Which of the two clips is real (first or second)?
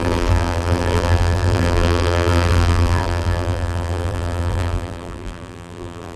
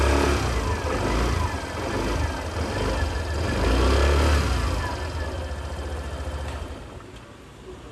second